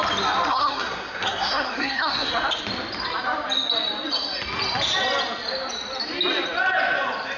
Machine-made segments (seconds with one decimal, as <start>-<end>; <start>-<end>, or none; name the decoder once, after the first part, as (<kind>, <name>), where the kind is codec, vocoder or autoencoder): 0.5-2.3 (codec, SNAC)